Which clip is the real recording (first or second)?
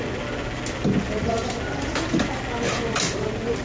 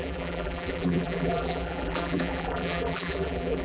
first